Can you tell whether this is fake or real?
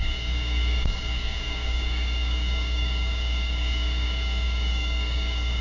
fake